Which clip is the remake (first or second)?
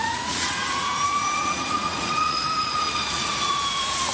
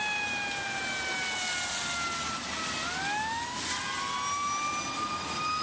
first